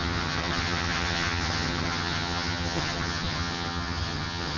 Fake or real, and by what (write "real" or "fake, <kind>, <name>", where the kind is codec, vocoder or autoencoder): fake, vocoder, HiFi-GAN